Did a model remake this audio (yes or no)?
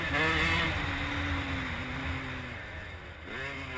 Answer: no